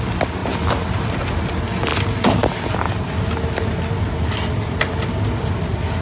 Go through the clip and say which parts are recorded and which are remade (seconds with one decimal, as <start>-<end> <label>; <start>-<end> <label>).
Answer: 0.0-6.0 recorded